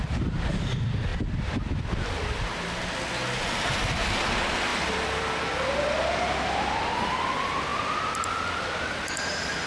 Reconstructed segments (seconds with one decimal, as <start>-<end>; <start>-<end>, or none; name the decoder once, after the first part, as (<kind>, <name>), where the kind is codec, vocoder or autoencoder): 4.7-5.4 (vocoder, BigVGAN v2); 7.7-8.9

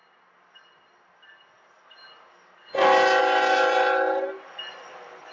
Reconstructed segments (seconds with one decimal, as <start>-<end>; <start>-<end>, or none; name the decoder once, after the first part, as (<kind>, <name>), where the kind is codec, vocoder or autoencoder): none

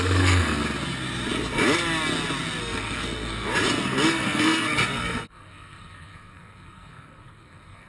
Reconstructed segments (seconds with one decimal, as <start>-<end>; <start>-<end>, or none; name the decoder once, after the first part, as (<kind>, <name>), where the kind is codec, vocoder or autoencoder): 0.0-0.6 (codec, SNAC); 2.6-3.5; 4.1-7.9

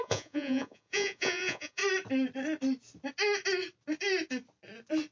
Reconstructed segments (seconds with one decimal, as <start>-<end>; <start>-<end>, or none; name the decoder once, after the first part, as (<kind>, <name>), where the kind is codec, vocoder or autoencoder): 0.0-1.8 (vocoder, Vocos)

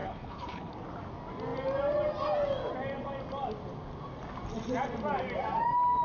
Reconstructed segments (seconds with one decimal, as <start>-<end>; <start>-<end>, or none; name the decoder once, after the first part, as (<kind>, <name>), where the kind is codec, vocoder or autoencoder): 0.0-0.7 (codec, HILCodec)

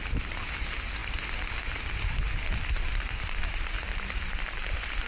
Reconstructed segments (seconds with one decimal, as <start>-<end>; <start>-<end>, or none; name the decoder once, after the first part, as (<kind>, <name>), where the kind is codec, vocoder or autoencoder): none